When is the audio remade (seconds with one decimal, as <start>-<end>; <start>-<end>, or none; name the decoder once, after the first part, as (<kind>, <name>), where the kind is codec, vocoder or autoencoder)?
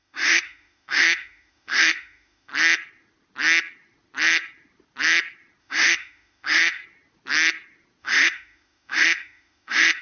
0.0-2.5 (autoencoder, DAC-VAE); 5.6-6.8; 8.0-10.0